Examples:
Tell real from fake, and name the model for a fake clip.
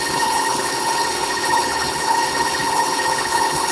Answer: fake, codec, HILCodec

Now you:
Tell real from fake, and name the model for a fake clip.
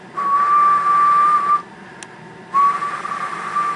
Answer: real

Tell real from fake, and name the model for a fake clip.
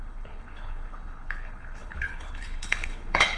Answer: fake, codec, HILCodec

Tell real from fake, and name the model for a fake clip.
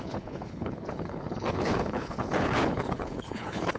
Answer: fake, codec, HILCodec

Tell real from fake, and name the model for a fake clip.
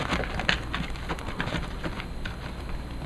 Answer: real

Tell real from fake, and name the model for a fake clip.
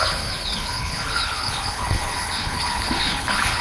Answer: fake, codec, HILCodec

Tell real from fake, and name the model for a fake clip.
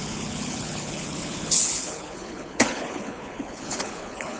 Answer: fake, codec, HILCodec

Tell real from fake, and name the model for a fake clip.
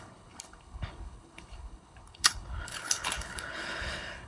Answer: fake, codec, HILCodec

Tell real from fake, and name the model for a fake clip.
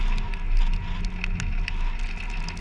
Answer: real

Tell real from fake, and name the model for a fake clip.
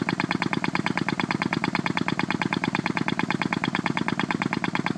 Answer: real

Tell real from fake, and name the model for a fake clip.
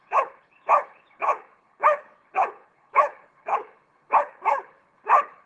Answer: fake, codec, HILCodec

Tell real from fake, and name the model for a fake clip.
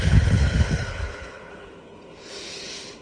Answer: fake, codec, HILCodec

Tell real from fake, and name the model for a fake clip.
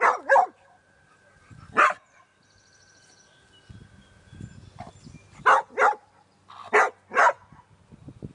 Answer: real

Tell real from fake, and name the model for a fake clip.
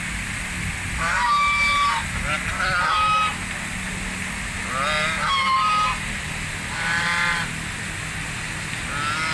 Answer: real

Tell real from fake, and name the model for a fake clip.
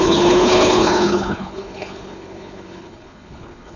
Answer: fake, codec, HILCodec